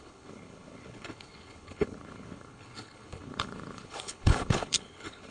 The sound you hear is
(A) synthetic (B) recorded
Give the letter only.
A